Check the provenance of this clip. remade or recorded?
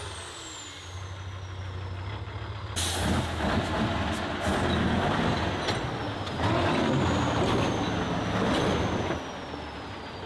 recorded